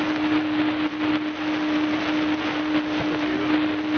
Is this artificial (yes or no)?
no